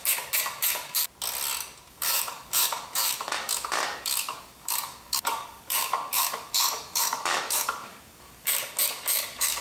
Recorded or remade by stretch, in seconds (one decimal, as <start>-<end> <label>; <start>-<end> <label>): 0.0-1.0 remade; 1.0-1.9 recorded; 1.9-9.6 remade